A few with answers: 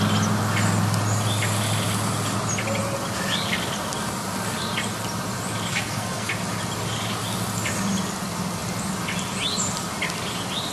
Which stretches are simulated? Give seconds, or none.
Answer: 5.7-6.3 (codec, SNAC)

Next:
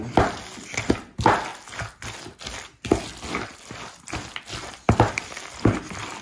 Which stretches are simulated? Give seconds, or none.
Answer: none

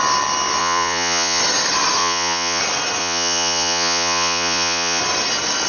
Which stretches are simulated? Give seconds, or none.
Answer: 0.6-1.4 (vocoder, Vocos); 2.0-2.6; 3.0-5.0